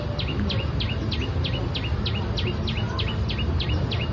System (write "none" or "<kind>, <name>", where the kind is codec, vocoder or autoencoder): none